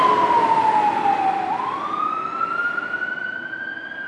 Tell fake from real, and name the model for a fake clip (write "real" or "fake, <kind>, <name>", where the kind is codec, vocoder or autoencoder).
real